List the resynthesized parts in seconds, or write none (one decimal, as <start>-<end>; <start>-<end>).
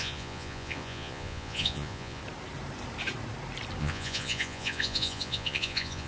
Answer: 0.0-2.2; 3.8-6.1